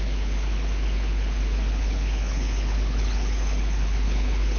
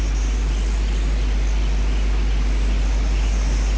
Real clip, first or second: second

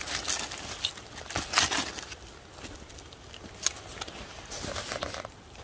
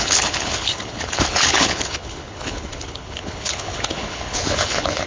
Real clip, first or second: first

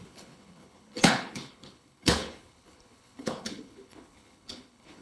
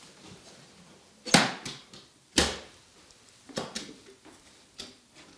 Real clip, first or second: second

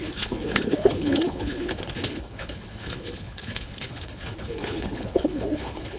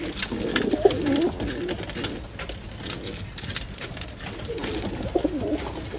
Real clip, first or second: second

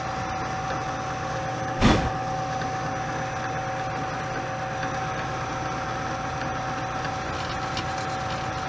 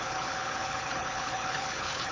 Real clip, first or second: first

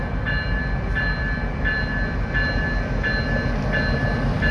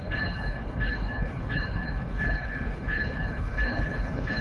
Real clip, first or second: first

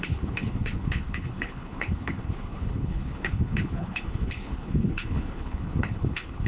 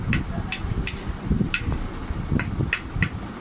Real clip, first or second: second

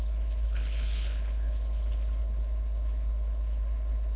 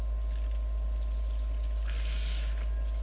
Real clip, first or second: second